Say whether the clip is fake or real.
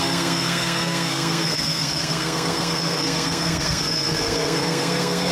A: fake